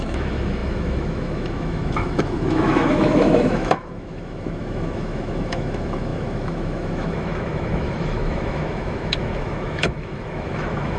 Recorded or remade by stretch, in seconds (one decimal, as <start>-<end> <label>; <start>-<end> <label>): 0.0-11.0 remade